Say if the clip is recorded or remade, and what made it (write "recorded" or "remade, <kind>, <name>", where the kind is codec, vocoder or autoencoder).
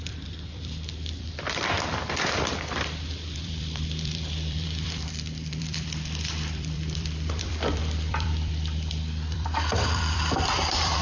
remade, vocoder, BigVGAN v2